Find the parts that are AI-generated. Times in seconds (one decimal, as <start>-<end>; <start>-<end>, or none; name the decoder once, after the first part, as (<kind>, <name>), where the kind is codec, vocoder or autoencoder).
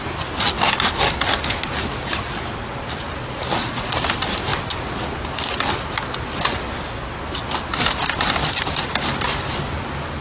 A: none